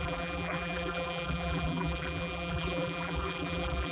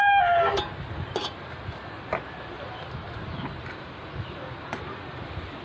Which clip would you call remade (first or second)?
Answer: first